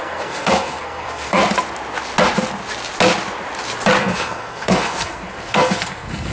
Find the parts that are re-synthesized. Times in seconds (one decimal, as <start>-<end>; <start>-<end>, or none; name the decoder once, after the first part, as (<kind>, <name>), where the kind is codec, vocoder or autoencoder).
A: 0.0-1.4 (codec, SNAC); 4.0-6.3